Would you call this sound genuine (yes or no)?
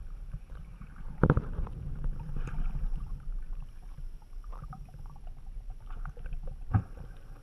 no